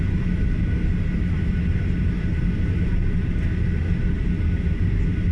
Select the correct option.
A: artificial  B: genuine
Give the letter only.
B